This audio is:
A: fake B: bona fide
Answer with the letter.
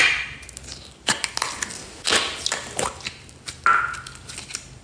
B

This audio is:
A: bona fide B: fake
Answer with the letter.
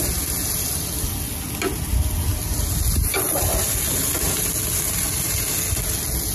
A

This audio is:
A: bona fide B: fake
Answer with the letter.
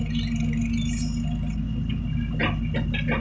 A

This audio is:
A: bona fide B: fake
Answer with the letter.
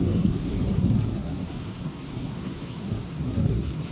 B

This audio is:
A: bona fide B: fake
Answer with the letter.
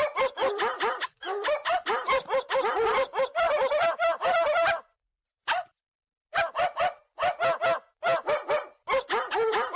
A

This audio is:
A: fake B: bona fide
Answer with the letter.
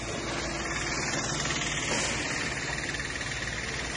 B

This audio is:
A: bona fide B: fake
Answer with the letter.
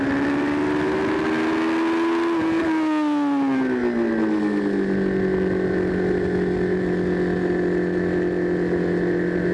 A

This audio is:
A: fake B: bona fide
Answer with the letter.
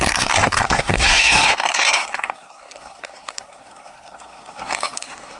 A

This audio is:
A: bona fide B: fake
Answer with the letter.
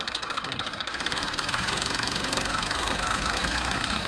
B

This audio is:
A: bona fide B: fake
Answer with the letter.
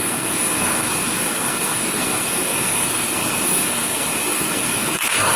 B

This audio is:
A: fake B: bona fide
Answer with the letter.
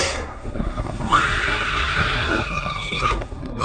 A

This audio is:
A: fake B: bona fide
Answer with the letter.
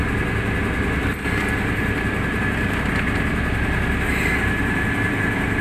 B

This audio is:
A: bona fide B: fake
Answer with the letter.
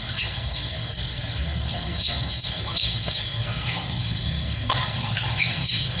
B